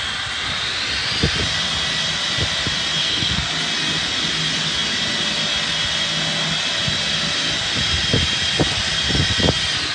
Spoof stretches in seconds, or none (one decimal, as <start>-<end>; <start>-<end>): 3.0-3.5